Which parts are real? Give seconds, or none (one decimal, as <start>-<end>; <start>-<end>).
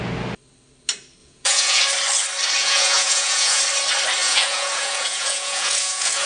0.0-1.2; 1.8-2.6; 3.6-4.2